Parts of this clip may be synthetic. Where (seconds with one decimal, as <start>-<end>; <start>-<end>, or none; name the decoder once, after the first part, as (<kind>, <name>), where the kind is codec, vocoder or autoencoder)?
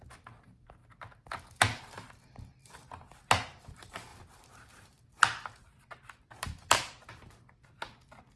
4.1-7.1 (vocoder, BigVGAN v2)